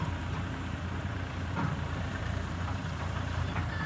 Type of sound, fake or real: fake